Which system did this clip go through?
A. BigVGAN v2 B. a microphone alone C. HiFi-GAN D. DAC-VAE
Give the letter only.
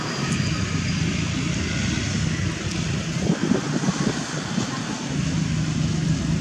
B